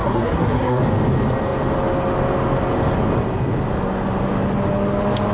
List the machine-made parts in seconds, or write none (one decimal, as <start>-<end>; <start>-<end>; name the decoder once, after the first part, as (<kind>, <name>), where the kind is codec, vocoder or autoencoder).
0.0-0.8 (codec, SNAC)